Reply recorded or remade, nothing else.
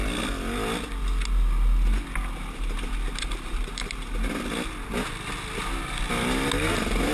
recorded